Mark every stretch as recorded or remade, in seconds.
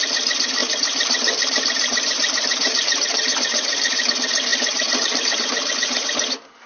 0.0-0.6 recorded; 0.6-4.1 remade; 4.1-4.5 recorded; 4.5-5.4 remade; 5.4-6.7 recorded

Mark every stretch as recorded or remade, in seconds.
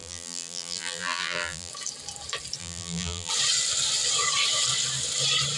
0.0-1.7 remade; 1.7-2.6 recorded; 2.6-3.3 remade; 3.3-5.6 recorded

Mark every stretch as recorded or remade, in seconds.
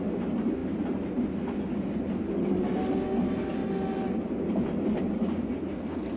0.0-6.2 recorded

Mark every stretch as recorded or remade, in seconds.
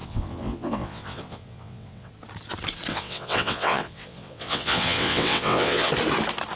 0.0-2.1 remade; 2.1-2.9 recorded; 2.9-5.9 remade; 5.9-6.6 recorded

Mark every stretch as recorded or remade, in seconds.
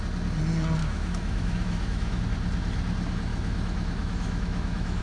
0.0-0.8 recorded; 0.8-2.2 remade; 2.2-3.3 recorded; 3.3-5.0 remade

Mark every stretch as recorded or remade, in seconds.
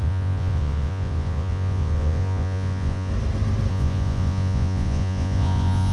0.0-3.1 remade; 3.1-3.7 recorded; 3.7-5.9 remade